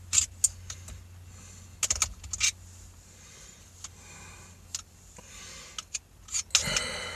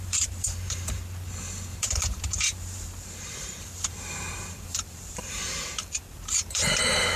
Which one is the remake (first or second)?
second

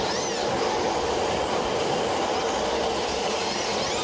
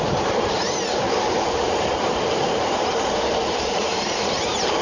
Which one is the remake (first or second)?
second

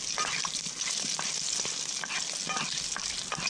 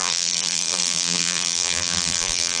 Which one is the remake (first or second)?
second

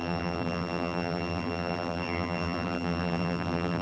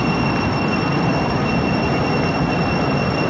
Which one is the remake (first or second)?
first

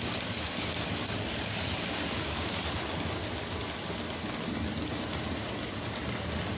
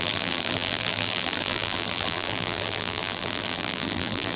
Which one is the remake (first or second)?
second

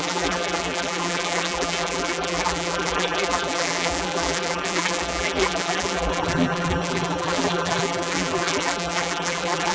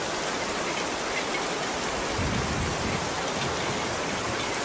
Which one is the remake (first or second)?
first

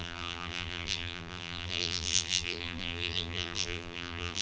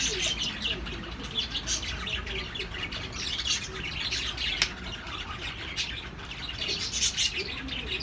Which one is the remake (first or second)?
first